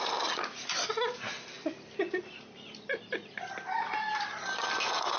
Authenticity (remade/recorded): recorded